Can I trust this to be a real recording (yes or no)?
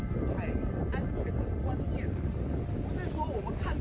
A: yes